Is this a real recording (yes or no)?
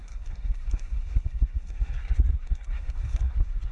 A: no